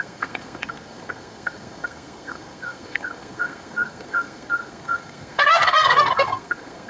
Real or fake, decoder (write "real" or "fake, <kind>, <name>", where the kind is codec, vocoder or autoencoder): fake, codec, SNAC